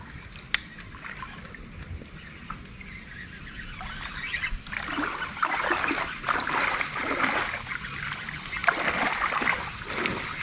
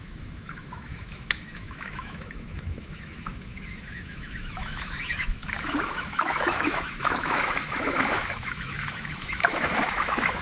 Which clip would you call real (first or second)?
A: first